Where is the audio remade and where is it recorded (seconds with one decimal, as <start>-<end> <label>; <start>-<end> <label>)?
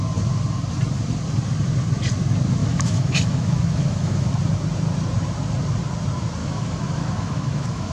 0.0-2.6 recorded; 2.6-4.3 remade; 4.3-6.4 recorded; 6.4-7.9 remade